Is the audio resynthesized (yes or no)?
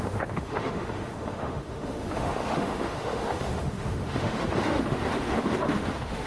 yes